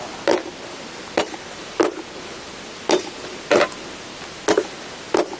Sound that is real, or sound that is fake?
real